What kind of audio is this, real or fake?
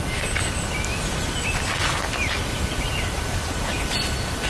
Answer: real